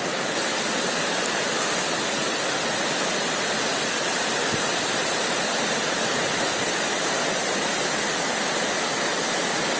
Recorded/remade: recorded